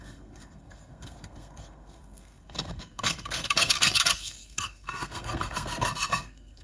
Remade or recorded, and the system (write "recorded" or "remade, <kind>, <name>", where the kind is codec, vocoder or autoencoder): remade, codec, SNAC